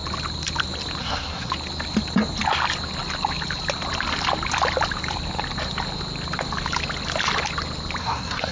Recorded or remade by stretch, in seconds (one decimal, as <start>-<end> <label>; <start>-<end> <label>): 0.0-1.0 recorded; 1.0-1.5 remade; 1.5-8.0 recorded; 8.0-8.5 remade